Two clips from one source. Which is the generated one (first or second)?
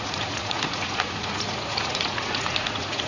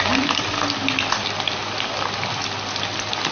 first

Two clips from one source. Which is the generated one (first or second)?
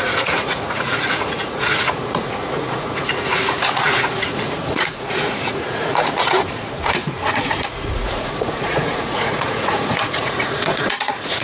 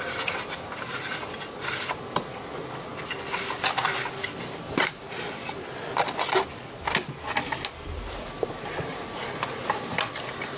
first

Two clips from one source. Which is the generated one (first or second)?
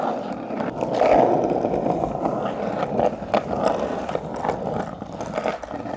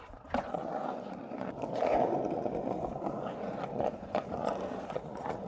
second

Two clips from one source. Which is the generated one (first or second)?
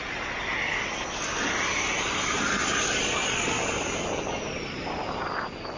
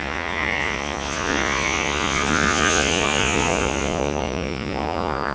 second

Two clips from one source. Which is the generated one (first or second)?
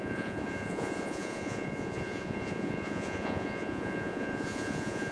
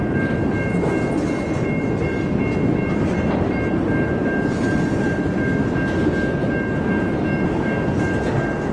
first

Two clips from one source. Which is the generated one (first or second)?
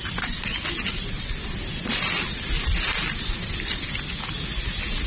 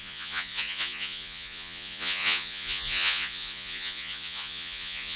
second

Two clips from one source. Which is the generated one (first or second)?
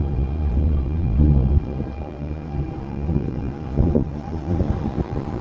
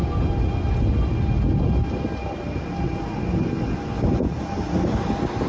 first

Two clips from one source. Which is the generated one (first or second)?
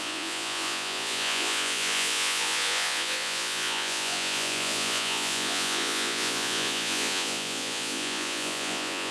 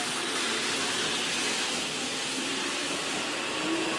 first